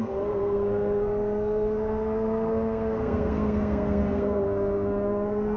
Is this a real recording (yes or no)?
no